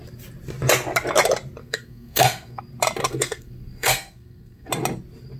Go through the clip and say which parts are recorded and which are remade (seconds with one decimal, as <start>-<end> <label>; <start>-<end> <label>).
0.0-1.6 recorded; 1.6-2.6 remade; 2.6-3.0 recorded; 3.0-4.7 remade; 4.7-5.4 recorded